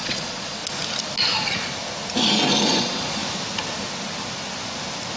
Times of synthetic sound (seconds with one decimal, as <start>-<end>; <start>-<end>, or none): 0.0-0.6; 2.8-3.2